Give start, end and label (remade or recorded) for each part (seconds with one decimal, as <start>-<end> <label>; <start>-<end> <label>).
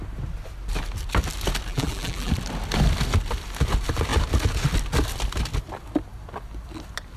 0.0-1.7 recorded; 1.7-2.3 remade; 2.3-7.2 recorded